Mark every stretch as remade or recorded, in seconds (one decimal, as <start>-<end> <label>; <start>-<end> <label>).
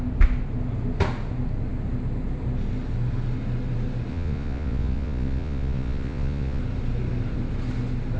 0.0-4.1 recorded; 4.1-6.6 remade; 6.6-8.2 recorded